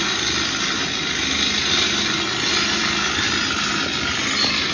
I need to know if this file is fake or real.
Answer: real